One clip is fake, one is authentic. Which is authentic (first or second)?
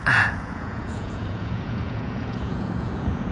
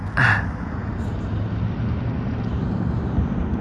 second